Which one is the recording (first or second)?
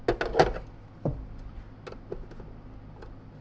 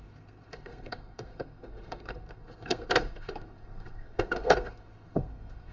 first